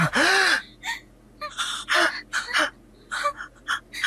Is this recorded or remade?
recorded